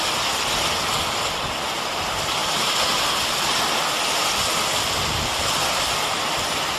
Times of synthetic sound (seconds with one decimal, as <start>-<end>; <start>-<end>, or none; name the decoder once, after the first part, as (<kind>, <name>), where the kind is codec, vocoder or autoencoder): 2.4-3.2 (vocoder, BigVGAN v2); 4.2-5.4

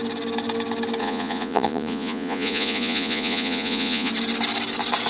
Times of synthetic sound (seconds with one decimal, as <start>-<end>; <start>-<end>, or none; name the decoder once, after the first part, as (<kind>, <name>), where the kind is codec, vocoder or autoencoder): 1.0-4.1 (vocoder, Vocos)

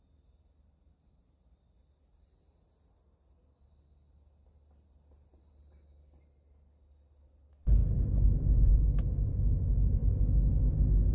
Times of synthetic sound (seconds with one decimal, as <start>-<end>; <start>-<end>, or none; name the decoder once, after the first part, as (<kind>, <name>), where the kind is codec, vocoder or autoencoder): none

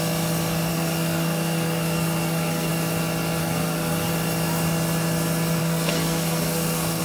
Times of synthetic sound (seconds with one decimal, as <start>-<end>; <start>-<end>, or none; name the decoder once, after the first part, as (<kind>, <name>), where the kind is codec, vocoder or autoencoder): 0.7-2.7 (codec, SNAC); 3.4-4.1; 5.6-7.0

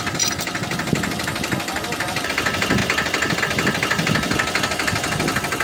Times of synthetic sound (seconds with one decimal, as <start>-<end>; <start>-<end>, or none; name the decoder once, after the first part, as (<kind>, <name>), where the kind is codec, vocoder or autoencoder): none